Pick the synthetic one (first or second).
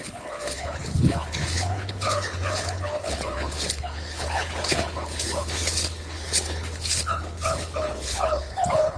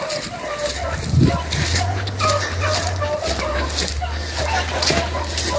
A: first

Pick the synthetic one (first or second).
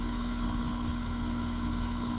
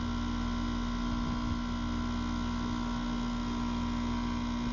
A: first